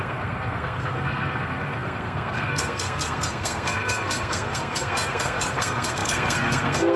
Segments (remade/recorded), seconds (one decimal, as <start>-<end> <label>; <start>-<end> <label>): 0.0-7.0 remade